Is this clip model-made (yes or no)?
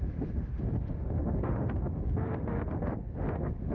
yes